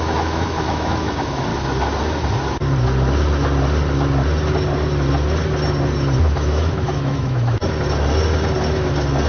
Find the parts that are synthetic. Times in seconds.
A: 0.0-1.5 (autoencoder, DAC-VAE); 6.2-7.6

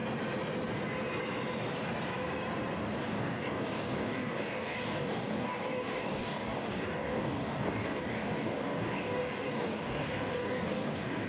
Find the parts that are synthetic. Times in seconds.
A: 3.0-11.3 (codec, DAC)

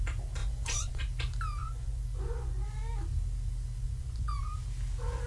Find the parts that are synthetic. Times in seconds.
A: 0.4-1.0 (vocoder, Vocos); 1.6-2.7; 3.8-4.4

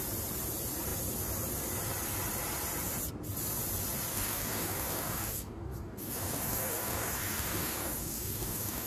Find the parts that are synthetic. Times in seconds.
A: 4.1-8.9 (codec, DAC)

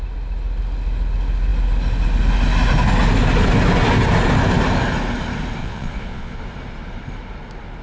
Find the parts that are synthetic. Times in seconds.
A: 5.6-6.4 (vocoder, Vocos)

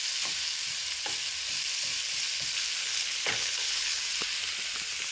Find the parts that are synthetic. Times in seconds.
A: 2.8-4.0 (codec, HILCodec)